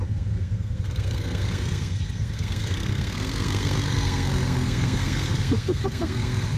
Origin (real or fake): fake